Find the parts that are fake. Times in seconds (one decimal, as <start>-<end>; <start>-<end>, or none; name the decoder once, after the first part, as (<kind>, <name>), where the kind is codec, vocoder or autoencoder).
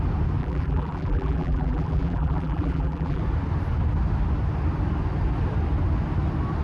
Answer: 0.4-3.2 (vocoder, BigVGAN v2)